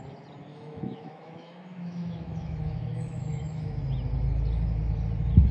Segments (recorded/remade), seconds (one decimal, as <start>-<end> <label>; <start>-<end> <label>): 0.0-0.5 recorded; 0.5-3.8 remade; 3.8-5.5 recorded